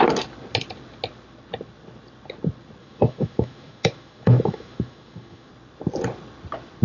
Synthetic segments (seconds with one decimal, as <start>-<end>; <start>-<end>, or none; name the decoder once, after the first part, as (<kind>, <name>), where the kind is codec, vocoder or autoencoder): 2.8-5.5 (autoencoder, DAC-VAE)